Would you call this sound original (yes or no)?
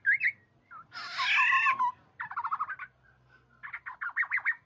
yes